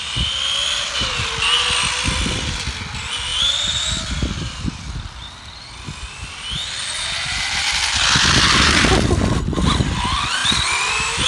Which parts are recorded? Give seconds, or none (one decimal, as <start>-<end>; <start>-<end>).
0.0-11.3